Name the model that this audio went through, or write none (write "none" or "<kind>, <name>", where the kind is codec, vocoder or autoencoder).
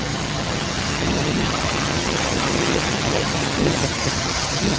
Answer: vocoder, HiFi-GAN